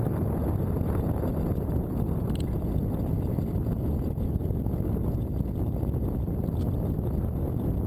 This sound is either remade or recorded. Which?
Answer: recorded